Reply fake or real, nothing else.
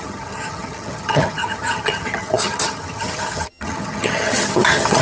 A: fake